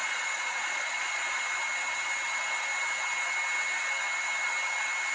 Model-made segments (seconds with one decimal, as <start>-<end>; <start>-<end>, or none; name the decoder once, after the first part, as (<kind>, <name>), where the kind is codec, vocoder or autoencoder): 0.0-1.4 (vocoder, Vocos)